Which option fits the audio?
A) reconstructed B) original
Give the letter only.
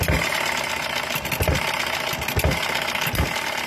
B